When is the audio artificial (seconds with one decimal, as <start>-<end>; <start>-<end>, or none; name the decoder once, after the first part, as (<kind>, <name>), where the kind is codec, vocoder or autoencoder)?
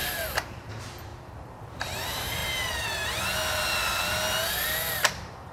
0.0-1.1 (vocoder, BigVGAN v2); 1.7-2.4; 4.9-5.5